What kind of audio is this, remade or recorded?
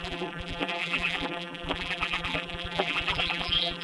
remade